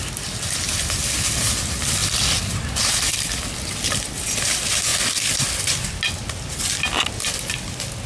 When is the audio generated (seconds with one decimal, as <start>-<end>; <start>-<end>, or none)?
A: none